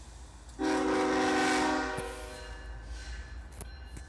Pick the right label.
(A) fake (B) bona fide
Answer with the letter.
B